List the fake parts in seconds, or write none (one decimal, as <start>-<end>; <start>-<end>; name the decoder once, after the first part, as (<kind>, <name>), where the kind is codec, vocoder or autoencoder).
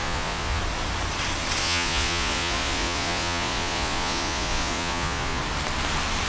0.0-0.6 (vocoder, Vocos); 1.6-5.4